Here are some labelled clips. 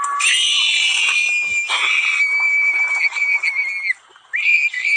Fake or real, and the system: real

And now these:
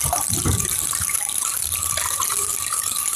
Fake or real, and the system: fake, vocoder, BigVGAN v2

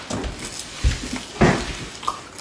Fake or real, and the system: real